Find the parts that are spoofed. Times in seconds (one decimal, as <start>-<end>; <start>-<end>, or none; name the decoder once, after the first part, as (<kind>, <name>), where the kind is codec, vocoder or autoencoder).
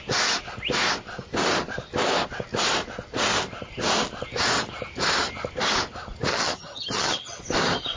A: 6.3-7.4 (vocoder, HiFi-GAN)